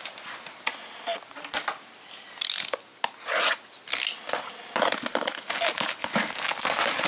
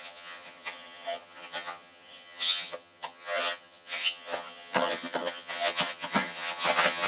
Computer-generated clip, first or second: second